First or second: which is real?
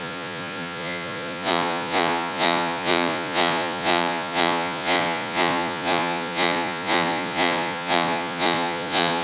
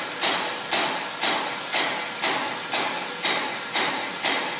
second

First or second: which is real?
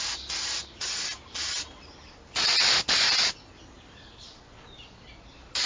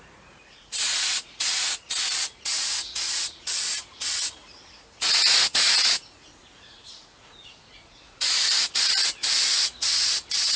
first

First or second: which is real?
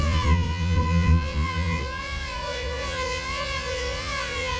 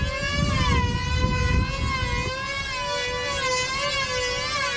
second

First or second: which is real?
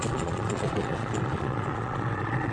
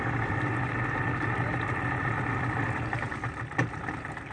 second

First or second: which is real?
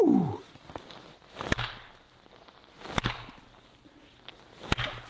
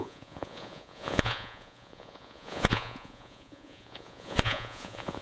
first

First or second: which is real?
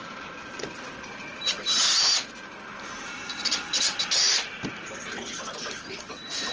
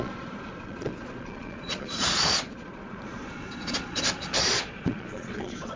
first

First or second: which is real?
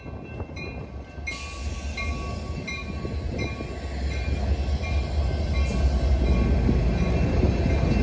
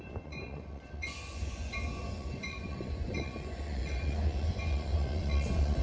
first